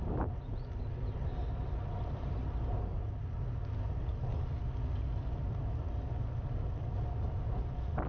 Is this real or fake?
real